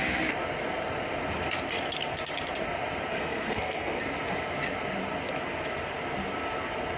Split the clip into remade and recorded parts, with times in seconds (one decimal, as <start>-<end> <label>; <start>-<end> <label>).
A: 0.0-3.1 recorded; 3.1-4.0 remade; 4.0-7.0 recorded